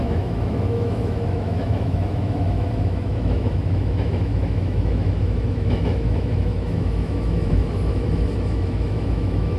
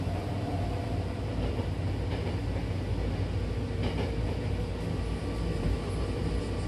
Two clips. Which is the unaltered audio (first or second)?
second